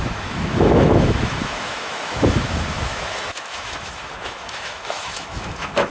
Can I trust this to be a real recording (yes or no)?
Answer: no